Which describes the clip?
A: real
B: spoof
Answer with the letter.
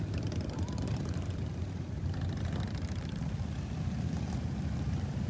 B